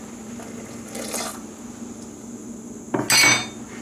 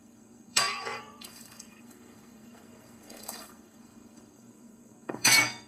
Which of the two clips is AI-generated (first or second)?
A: second